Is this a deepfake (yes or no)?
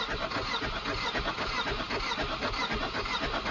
no